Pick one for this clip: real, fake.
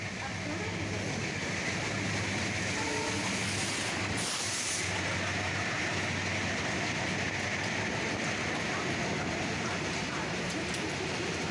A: real